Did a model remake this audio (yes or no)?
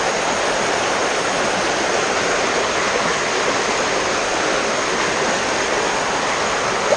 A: no